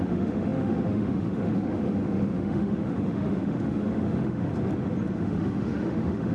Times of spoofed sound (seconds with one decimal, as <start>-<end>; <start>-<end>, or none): 0.0-4.5; 5.2-6.3